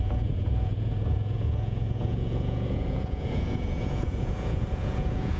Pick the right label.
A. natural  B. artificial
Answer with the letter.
B